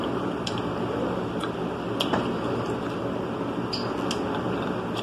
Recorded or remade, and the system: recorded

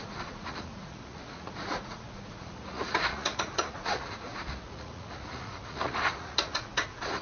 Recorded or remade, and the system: remade, vocoder, Vocos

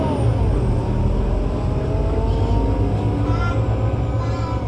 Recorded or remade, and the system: recorded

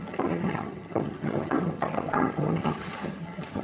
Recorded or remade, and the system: remade, vocoder, HiFi-GAN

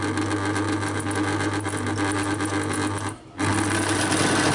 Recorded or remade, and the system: recorded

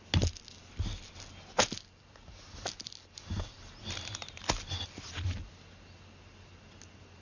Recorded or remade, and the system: recorded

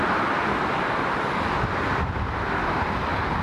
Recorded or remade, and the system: recorded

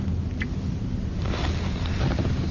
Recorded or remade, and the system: recorded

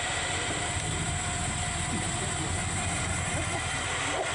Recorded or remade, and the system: recorded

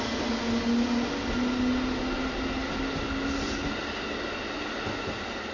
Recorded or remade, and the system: recorded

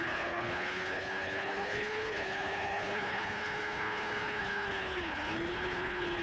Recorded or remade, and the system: remade, codec, HILCodec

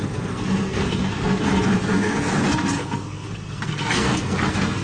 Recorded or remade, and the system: remade, codec, SNAC